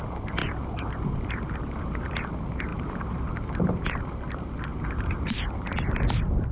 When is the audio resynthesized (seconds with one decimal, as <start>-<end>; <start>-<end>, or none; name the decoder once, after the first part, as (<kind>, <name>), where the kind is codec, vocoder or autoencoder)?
0.4-2.3 (vocoder, BigVGAN v2); 2.7-3.3; 4.7-5.7